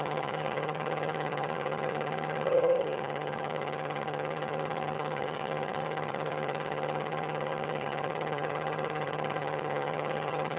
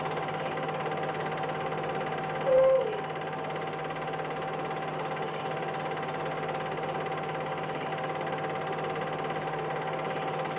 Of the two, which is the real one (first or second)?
second